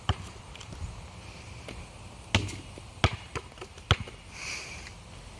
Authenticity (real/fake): real